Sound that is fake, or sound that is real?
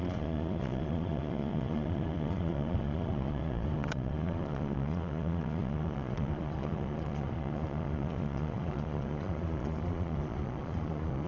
fake